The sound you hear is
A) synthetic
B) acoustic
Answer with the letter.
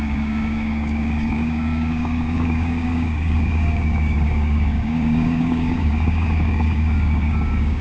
A